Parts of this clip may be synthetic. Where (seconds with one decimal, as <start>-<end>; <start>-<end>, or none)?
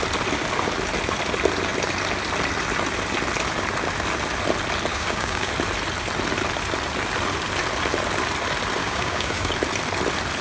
4.9-5.5; 8.8-9.5